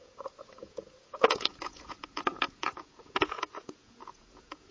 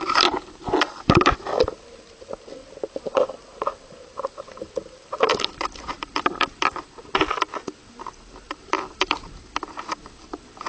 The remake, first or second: first